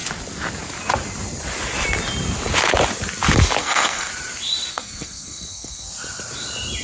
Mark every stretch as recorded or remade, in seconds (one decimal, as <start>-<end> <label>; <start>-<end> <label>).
0.0-3.6 recorded; 3.6-4.1 remade; 4.1-4.7 recorded; 4.7-5.9 remade; 5.9-6.8 recorded